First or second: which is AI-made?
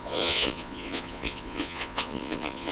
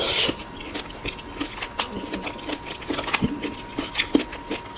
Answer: first